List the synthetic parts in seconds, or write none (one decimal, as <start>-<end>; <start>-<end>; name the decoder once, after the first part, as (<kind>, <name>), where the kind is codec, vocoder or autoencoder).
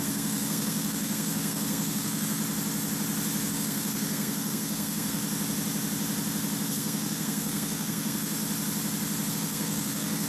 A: 0.0-2.4 (codec, SNAC); 3.5-5.2; 6.7-8.4; 9.3-10.3